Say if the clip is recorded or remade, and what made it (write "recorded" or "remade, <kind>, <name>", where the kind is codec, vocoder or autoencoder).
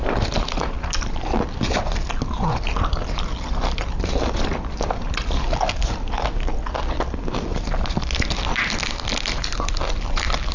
recorded